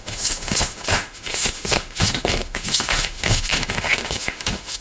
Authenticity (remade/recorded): remade